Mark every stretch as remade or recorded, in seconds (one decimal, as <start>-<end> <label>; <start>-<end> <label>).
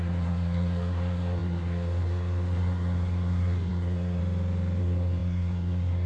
0.0-4.2 remade; 4.2-4.8 recorded; 4.8-6.1 remade